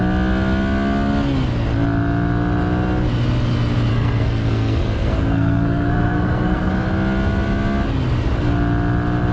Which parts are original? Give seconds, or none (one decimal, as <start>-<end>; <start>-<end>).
0.0-3.9; 6.7-9.3